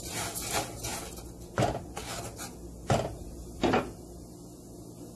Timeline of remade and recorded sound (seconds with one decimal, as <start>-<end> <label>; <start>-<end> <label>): 0.0-5.2 recorded